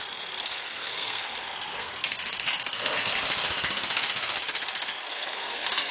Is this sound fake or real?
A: fake